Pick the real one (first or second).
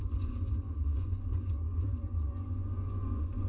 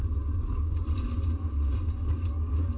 second